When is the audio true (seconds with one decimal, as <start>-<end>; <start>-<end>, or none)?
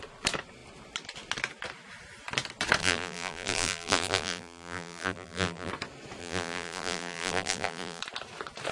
0.0-2.8; 5.7-6.2; 8.0-8.7